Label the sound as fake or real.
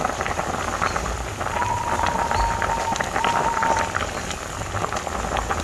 real